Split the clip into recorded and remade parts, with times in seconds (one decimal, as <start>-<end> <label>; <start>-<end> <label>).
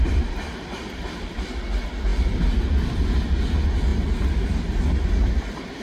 0.0-5.8 recorded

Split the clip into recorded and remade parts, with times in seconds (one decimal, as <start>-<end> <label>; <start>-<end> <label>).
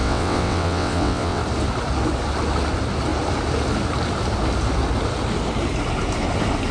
0.0-1.4 remade; 1.4-6.7 recorded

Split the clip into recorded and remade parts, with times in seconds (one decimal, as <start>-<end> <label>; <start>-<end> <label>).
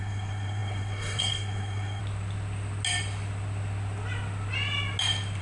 0.0-2.0 remade; 2.0-5.4 recorded